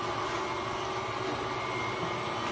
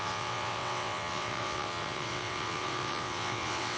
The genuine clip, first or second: first